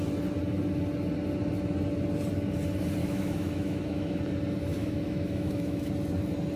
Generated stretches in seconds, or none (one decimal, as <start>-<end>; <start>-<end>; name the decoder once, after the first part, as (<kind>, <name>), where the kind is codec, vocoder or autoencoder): 3.0-4.2 (autoencoder, DAC-VAE); 4.8-5.9